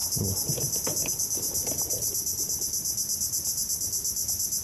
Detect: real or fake real